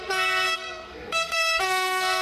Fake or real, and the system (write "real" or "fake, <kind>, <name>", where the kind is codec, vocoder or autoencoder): fake, codec, SNAC